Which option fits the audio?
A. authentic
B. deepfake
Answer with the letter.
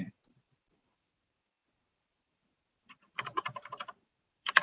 B